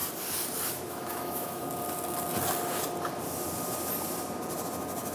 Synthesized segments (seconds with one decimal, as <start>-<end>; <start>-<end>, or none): 0.7-1.6